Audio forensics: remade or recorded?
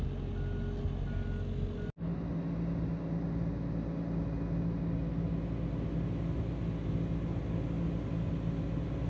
recorded